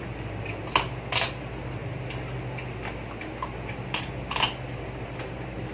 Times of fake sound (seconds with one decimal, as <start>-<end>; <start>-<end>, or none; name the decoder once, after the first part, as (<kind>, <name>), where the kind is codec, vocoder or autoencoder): none